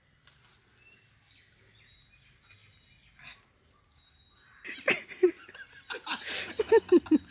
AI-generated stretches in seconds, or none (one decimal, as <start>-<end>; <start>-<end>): none